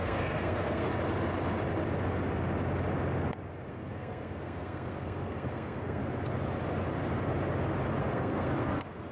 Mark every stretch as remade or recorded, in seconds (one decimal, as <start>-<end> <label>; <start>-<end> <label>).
0.0-0.9 remade; 0.9-3.7 recorded; 3.7-6.0 remade; 6.0-8.0 recorded; 8.0-9.1 remade